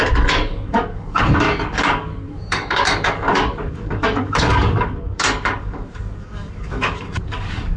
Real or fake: fake